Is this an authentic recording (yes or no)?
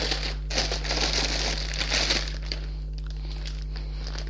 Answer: yes